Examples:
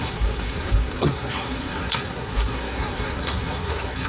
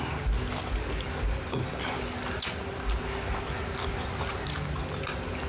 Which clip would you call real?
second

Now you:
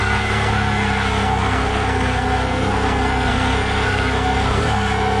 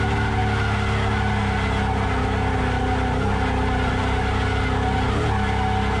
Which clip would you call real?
second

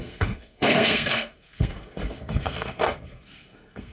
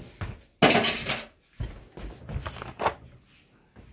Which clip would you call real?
second